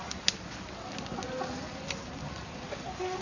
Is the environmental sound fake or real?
real